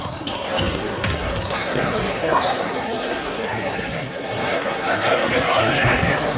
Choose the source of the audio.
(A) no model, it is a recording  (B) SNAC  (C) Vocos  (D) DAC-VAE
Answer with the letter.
B